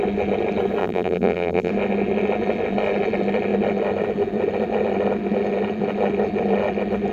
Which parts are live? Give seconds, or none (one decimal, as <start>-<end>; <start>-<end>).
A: 0.0-0.8; 1.7-7.1